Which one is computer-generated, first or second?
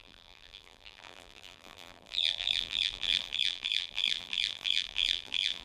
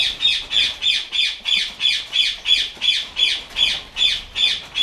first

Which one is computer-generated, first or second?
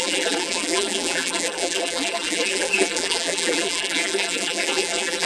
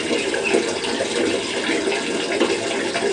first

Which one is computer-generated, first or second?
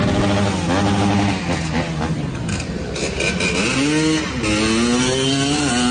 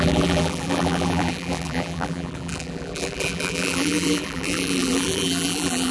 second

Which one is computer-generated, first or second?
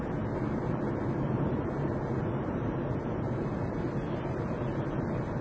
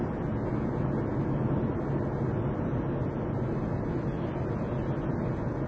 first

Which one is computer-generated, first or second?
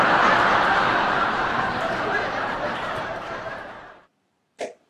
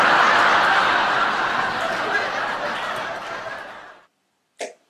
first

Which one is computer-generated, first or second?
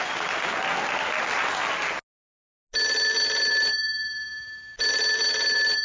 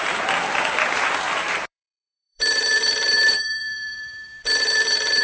second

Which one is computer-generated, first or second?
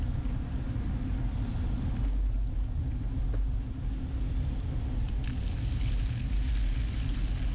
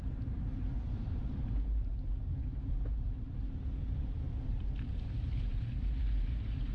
second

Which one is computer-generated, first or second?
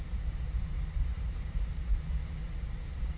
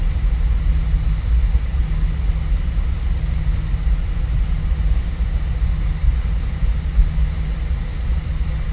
first